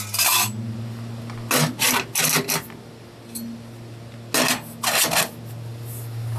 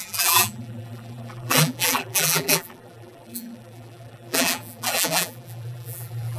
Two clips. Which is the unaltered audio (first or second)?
first